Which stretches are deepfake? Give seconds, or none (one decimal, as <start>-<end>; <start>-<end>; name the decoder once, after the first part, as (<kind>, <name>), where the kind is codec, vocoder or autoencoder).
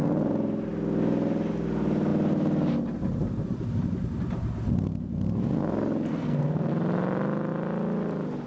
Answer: 6.1-6.7 (codec, SNAC)